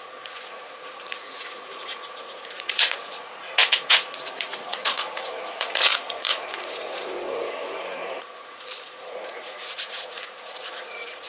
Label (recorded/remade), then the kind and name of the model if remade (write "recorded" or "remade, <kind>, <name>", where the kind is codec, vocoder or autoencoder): remade, vocoder, Vocos